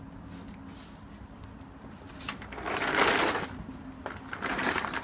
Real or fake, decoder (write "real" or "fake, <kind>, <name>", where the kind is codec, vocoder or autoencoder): real